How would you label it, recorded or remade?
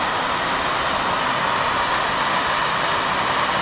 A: recorded